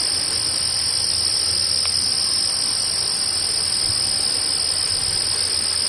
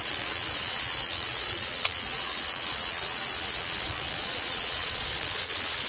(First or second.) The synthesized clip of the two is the second